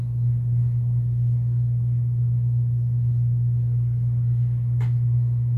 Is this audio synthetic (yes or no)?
no